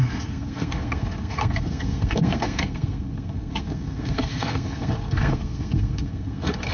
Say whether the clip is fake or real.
fake